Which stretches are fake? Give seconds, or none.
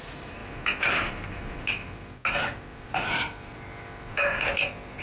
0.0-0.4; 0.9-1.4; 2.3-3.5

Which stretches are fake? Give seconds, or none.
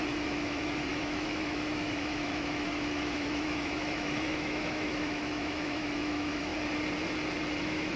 0.0-6.5; 7.6-8.0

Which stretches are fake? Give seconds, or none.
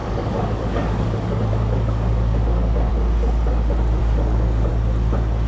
0.0-2.9; 4.0-4.7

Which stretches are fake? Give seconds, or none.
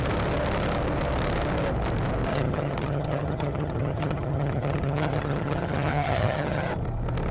2.3-6.7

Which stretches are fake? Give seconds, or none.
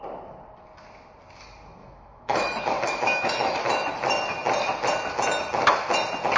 1.8-3.6